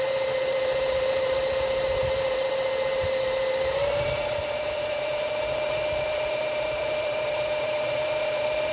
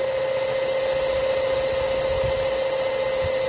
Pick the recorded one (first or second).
second